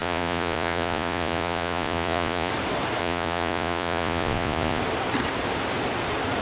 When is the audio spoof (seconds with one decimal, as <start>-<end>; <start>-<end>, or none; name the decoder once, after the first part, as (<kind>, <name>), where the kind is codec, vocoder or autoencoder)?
0.0-2.5 (vocoder, Vocos); 3.0-4.8